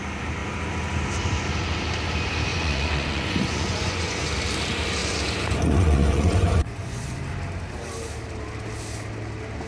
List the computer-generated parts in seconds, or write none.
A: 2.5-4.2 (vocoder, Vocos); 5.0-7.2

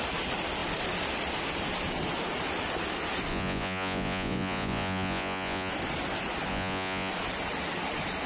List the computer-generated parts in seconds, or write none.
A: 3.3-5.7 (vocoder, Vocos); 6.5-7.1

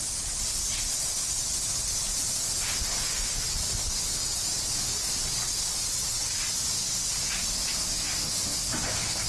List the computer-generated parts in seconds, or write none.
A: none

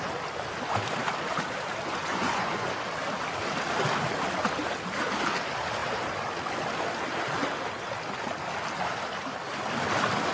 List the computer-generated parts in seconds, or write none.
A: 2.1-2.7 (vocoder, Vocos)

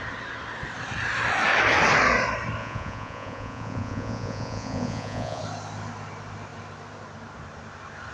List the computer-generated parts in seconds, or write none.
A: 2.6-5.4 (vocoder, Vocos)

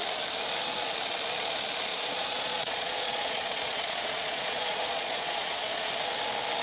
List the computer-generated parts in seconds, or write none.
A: 1.9-5.9 (vocoder, Vocos)

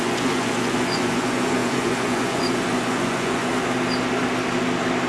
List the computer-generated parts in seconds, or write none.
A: 0.0-3.5 (vocoder, Vocos)

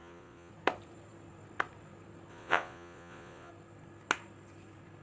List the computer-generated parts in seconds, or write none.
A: 0.0-0.5 (vocoder, Vocos); 2.3-3.5